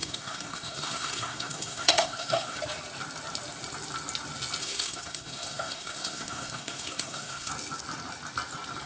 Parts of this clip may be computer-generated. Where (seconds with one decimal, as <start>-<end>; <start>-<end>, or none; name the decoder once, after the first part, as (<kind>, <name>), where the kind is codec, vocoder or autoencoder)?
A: 0.0-2.6 (codec, SNAC); 4.6-7.5